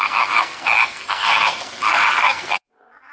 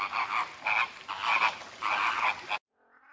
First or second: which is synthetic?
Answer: first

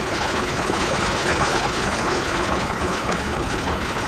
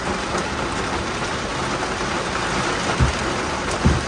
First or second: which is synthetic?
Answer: first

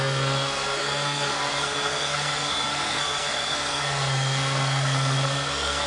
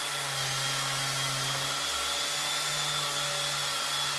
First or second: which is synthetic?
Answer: first